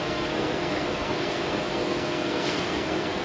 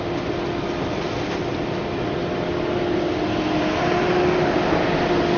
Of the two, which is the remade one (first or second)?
first